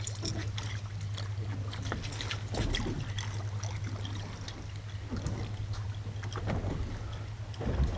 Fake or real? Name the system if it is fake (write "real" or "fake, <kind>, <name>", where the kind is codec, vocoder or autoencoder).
real